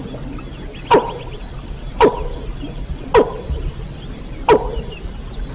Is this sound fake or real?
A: real